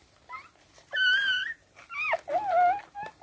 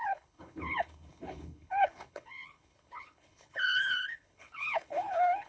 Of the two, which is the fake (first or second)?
second